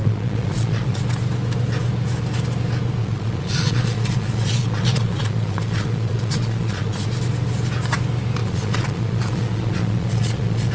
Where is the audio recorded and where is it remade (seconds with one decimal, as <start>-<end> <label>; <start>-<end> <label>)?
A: 0.0-1.0 remade; 1.0-3.0 recorded; 3.0-7.1 remade; 7.1-8.4 recorded; 8.4-10.7 remade